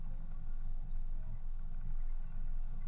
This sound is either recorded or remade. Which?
recorded